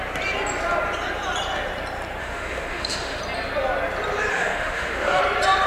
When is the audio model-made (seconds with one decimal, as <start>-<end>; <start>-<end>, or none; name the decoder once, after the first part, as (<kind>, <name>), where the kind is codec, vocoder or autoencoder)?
2.2-3.2 (autoencoder, DAC-VAE); 4.3-5.2